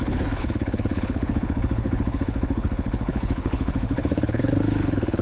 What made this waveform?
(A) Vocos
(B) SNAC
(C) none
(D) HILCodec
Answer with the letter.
D